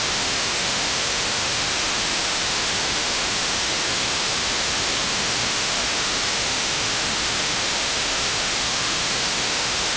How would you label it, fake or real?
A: fake